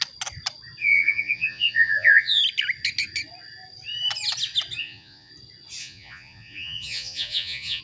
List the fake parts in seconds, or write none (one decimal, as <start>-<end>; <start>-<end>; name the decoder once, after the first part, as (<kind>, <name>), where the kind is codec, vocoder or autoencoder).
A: 0.8-2.4 (vocoder, Vocos); 4.8-5.3; 5.8-7.8